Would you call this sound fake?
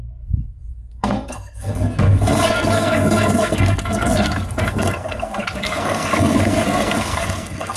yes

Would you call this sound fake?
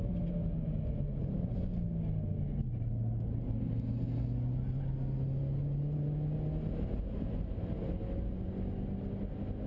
no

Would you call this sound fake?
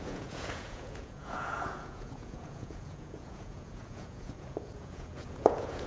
yes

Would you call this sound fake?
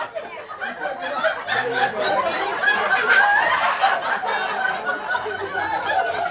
no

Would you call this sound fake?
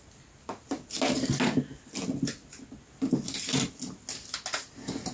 no